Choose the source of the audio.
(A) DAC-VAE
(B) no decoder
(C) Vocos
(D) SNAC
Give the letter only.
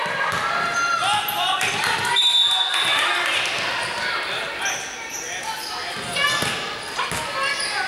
B